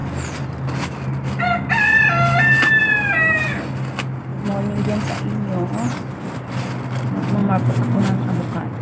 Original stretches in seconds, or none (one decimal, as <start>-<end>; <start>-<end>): 0.0-8.8